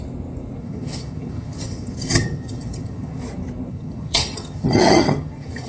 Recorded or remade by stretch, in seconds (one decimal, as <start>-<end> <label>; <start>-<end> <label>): 0.0-0.6 recorded; 0.6-3.2 remade; 3.2-3.7 recorded; 3.7-5.7 remade